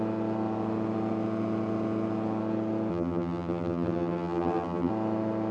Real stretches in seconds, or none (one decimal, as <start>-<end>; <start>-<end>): 0.0-2.9; 4.9-5.5